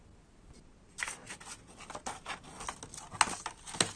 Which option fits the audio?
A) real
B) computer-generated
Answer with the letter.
A